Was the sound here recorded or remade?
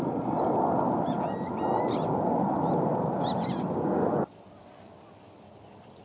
recorded